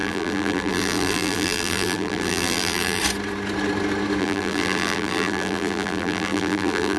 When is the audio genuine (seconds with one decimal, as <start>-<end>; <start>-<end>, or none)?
3.0-4.2